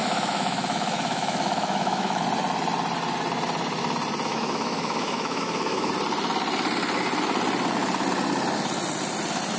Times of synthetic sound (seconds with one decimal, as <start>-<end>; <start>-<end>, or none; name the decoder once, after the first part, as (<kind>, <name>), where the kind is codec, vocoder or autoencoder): 0.0-2.2 (autoencoder, DAC-VAE); 4.3-5.9